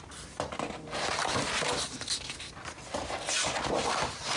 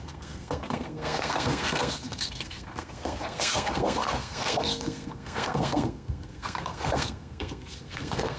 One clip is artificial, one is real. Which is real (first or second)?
first